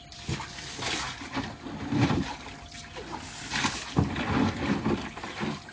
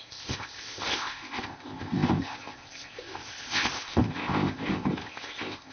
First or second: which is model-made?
second